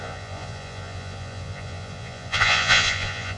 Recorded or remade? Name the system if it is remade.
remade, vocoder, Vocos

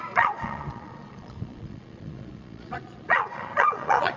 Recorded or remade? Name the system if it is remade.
remade, vocoder, Vocos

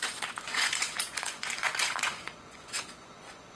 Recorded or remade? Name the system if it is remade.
remade, vocoder, Vocos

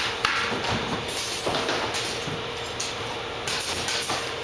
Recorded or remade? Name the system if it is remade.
recorded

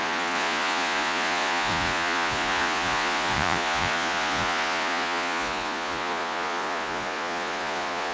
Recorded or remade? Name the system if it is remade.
remade, vocoder, Vocos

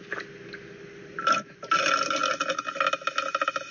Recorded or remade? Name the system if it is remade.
recorded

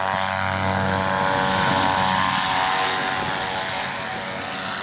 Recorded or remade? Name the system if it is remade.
recorded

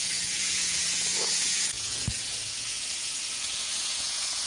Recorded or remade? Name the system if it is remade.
remade, vocoder, Vocos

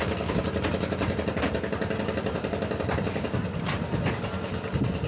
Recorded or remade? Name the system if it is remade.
recorded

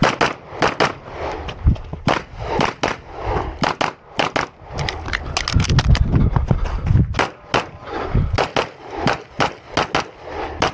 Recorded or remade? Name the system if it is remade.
recorded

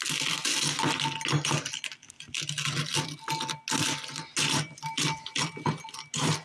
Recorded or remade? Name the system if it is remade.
recorded